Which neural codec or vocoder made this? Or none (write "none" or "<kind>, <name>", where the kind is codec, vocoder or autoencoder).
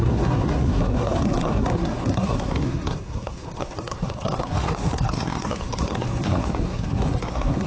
codec, SNAC